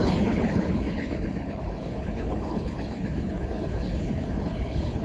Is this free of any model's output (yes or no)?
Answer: no